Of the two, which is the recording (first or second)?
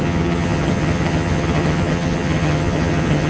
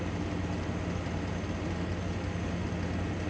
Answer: second